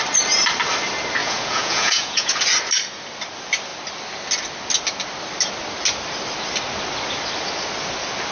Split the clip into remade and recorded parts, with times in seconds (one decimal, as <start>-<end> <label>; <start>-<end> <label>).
0.0-1.2 recorded; 1.2-2.4 remade; 2.4-8.3 recorded